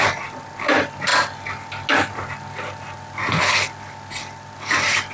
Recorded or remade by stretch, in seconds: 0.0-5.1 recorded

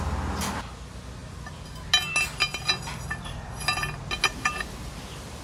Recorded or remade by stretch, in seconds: 0.0-5.4 recorded

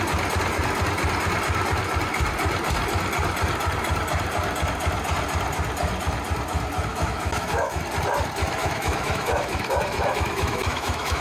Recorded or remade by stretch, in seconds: 0.0-6.9 recorded; 6.9-7.8 remade; 7.8-8.6 recorded; 8.6-11.2 remade

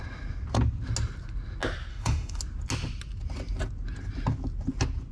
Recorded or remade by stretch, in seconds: 0.0-1.9 recorded; 1.9-2.4 remade; 2.4-5.1 recorded

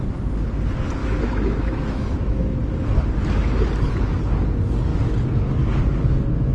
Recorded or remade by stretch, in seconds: 0.0-1.0 recorded; 1.0-2.6 remade; 2.6-6.5 recorded

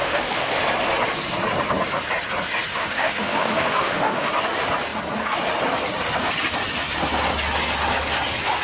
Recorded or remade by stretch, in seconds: 0.0-0.6 remade; 0.6-2.7 recorded; 2.7-4.3 remade; 4.3-8.6 recorded

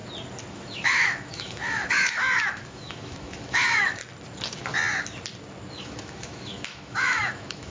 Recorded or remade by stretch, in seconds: 0.0-0.5 recorded; 0.5-4.0 remade; 4.0-5.8 recorded; 5.8-7.7 remade

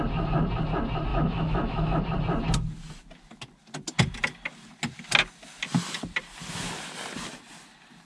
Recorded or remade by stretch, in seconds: 0.0-1.1 recorded; 1.1-2.0 remade; 2.0-8.1 recorded